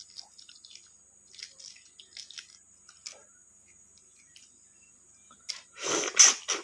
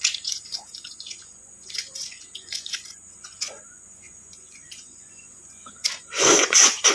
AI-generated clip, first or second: second